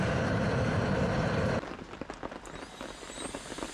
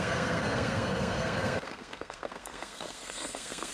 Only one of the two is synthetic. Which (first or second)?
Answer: second